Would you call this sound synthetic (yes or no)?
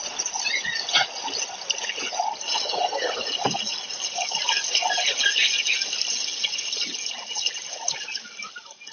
no